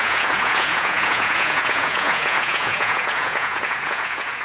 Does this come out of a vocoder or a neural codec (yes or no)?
yes